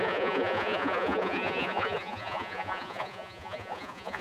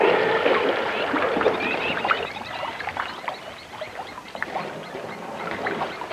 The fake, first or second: first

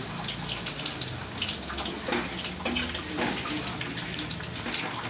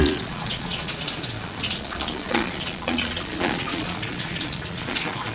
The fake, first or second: second